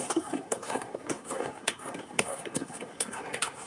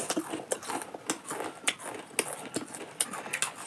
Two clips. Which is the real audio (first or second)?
second